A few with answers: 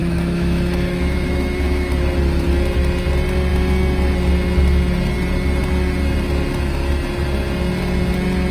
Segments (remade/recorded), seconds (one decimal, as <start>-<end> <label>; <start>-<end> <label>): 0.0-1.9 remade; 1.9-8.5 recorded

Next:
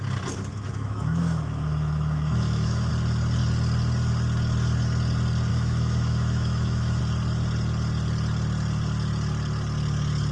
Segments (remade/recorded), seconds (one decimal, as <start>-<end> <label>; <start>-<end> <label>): 0.0-0.5 recorded; 0.5-2.9 remade; 2.9-5.5 recorded; 5.5-7.0 remade; 7.0-10.3 recorded

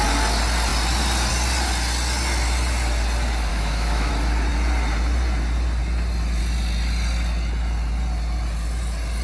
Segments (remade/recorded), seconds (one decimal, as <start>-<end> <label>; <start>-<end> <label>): 0.0-3.5 recorded; 3.5-4.1 remade; 4.1-9.2 recorded

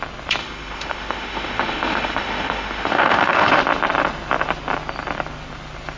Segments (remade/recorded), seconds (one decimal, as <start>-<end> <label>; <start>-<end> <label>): 0.0-0.4 recorded; 0.4-3.6 remade; 3.6-6.0 recorded

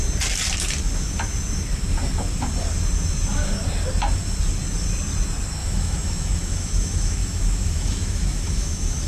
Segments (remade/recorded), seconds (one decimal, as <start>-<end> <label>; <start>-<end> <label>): 0.0-5.6 recorded; 5.6-9.1 remade